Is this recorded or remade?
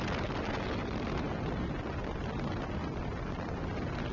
recorded